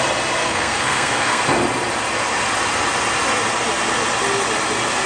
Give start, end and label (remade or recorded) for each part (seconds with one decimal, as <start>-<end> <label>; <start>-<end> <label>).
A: 0.0-0.4 recorded; 0.4-1.4 remade; 1.4-5.1 recorded